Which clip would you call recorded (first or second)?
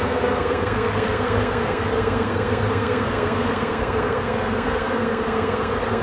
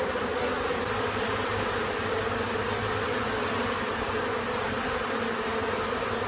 second